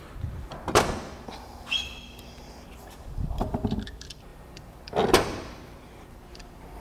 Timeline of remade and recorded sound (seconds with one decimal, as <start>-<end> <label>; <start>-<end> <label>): 0.0-6.8 remade